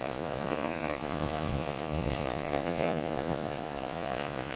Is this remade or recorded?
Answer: remade